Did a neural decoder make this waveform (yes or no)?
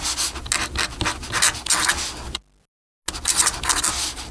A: no